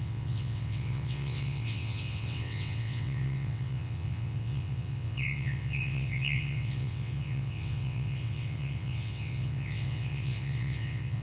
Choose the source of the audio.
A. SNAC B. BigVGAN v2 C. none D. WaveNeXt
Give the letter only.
D